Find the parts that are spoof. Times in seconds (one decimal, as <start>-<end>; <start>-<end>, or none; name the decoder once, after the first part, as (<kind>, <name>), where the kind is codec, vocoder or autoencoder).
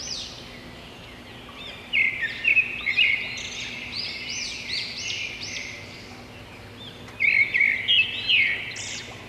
none